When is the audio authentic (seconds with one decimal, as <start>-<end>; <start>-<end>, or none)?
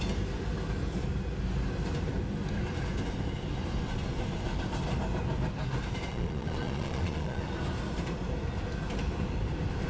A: 0.0-6.1; 7.4-9.9